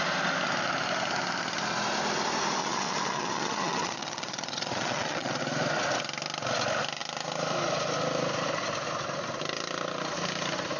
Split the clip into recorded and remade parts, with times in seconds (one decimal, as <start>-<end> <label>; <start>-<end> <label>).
0.0-2.6 recorded; 2.6-5.4 remade; 5.4-10.8 recorded